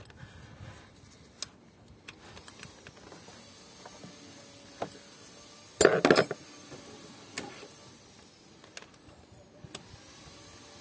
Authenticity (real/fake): real